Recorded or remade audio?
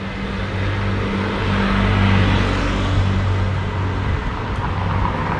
recorded